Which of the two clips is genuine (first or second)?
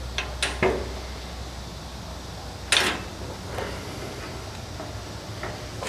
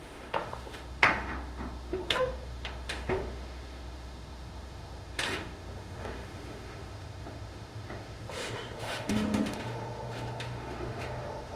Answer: first